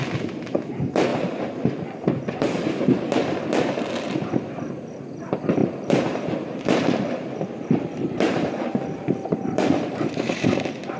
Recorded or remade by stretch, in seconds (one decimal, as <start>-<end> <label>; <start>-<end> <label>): 0.0-1.1 recorded; 1.1-3.4 remade; 3.4-5.6 recorded; 5.6-10.6 remade; 10.6-11.0 recorded

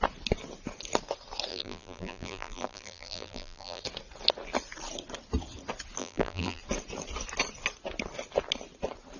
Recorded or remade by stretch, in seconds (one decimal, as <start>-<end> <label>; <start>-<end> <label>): 0.0-1.5 recorded; 1.5-3.8 remade; 3.8-6.0 recorded; 6.0-6.6 remade; 6.6-9.2 recorded

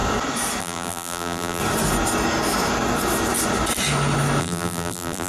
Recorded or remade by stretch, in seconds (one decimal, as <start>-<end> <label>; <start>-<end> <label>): 0.0-0.6 recorded; 0.6-1.6 remade; 1.6-4.4 recorded; 4.4-5.3 remade